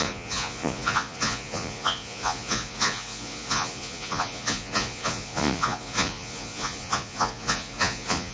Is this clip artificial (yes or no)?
yes